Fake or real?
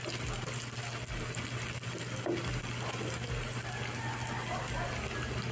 real